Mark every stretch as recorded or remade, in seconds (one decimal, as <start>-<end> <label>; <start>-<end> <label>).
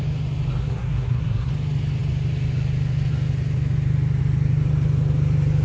0.0-0.6 recorded; 0.6-1.5 remade; 1.5-5.6 recorded